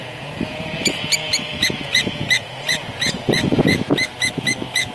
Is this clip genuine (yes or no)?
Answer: no